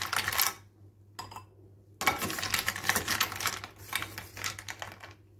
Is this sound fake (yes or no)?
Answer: no